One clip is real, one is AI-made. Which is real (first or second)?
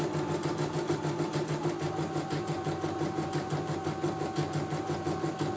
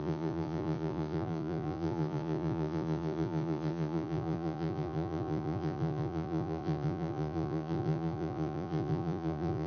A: first